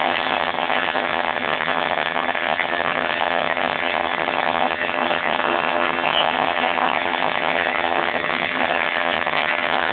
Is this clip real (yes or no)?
no